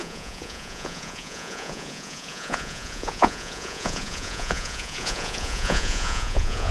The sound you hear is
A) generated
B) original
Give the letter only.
A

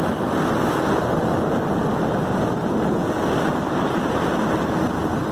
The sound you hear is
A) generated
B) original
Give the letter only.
B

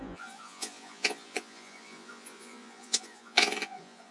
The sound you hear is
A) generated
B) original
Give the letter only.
A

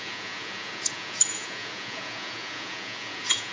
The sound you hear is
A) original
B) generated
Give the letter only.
B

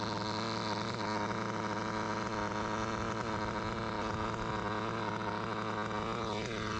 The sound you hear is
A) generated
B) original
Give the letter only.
B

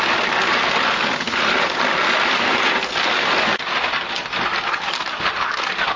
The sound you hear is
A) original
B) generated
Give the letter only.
A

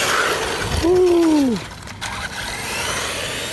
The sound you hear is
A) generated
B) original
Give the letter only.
B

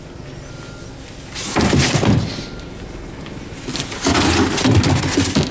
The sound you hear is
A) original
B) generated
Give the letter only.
A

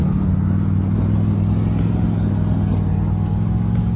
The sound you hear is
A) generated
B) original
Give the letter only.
B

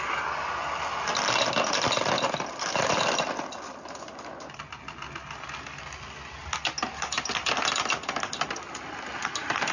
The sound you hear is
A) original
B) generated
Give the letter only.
A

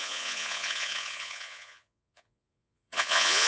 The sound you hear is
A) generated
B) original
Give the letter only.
A